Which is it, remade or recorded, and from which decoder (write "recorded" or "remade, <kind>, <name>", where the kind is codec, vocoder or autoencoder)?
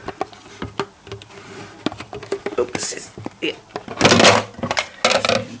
recorded